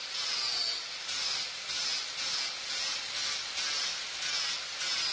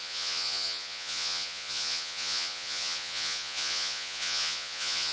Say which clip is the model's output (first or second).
second